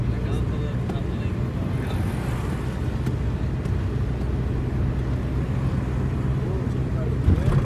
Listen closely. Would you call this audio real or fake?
real